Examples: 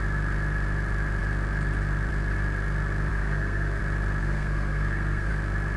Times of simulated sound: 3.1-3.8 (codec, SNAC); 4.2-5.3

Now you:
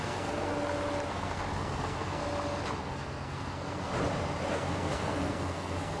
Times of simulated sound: 0.0-0.5 (codec, SNAC); 1.1-2.2; 2.8-3.9; 4.5-6.0